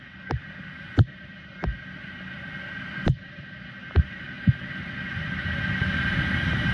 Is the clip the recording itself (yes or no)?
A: yes